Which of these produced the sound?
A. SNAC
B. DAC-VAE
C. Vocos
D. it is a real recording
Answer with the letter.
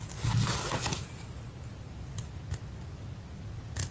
D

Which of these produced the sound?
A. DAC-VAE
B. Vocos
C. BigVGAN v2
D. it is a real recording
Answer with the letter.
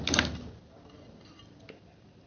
D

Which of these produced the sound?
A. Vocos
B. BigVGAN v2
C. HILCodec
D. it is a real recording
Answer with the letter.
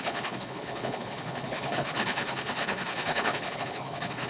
C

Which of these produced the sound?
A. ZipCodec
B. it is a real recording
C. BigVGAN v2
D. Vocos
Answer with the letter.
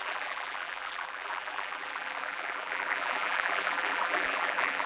C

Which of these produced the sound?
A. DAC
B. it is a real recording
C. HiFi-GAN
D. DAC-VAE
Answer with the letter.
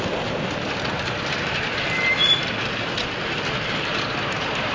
B